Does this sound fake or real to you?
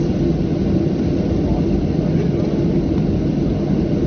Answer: real